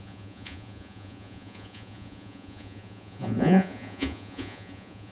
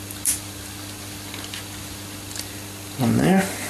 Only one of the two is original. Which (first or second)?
second